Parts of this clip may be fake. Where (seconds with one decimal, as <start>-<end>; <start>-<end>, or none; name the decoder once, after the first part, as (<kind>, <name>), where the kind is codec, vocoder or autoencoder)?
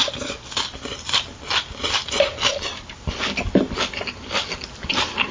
none